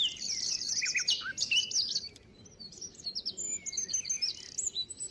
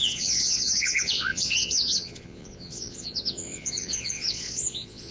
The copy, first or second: second